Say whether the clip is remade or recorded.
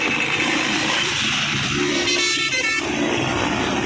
remade